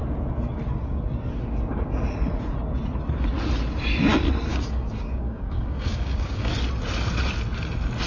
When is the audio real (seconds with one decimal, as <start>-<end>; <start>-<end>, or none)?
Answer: 0.0-4.5; 6.5-8.1